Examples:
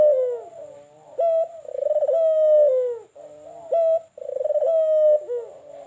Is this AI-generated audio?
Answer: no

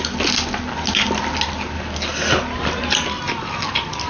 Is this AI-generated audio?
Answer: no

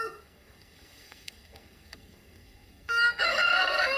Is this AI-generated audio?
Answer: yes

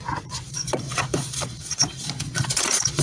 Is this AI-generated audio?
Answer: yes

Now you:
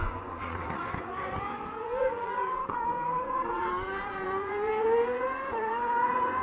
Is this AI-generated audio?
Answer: yes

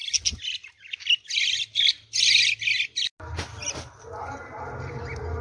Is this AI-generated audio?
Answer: no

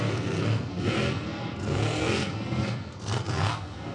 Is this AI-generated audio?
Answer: yes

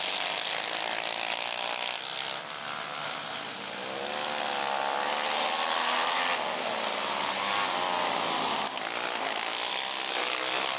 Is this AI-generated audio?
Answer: no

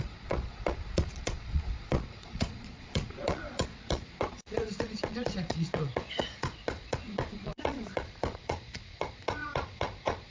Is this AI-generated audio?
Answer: yes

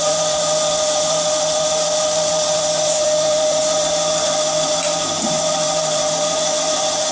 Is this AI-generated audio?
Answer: yes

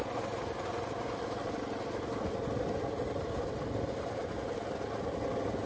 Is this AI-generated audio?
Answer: no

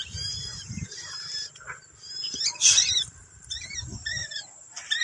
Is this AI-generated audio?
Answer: yes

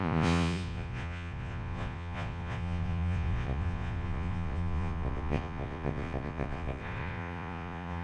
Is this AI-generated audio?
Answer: yes